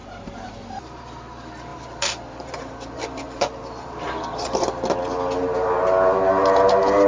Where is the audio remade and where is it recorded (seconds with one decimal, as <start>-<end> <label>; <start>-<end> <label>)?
0.0-1.0 remade; 1.0-1.7 recorded; 1.7-4.5 remade; 4.5-7.1 recorded